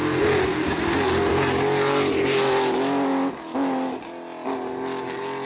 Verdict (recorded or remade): recorded